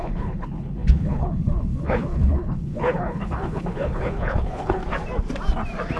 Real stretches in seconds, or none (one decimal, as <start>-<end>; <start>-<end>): 4.8-6.0